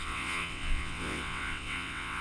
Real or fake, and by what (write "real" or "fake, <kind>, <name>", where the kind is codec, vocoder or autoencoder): fake, vocoder, WaveNeXt